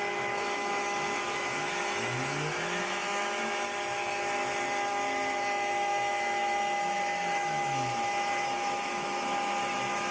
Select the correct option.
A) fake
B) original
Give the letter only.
A